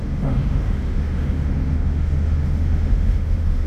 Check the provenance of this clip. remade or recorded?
remade